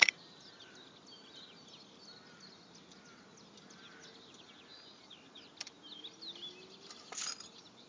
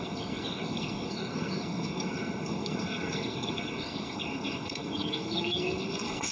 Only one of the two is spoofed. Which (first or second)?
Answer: second